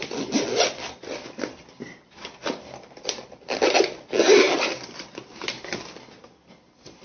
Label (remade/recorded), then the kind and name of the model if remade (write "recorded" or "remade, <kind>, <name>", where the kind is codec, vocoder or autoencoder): recorded